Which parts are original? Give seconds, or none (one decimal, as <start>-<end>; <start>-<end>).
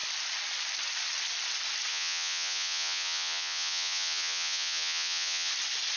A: 0.0-1.9; 5.5-6.0